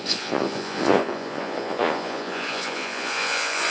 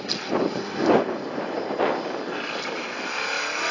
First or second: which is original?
second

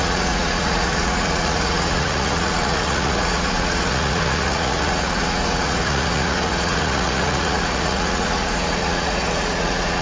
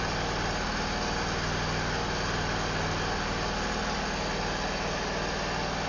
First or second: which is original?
second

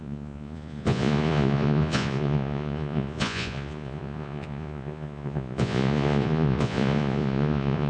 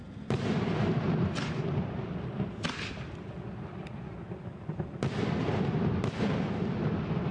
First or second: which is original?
second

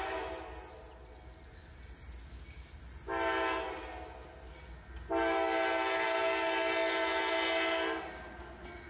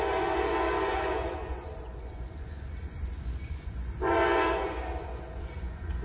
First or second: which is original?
first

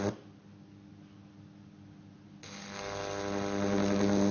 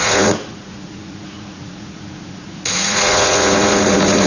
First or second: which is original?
first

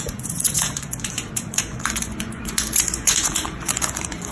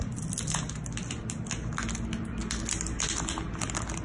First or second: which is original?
second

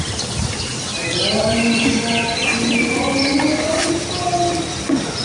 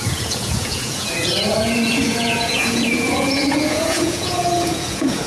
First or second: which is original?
first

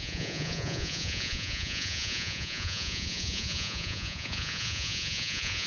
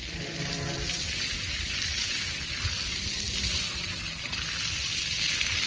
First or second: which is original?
second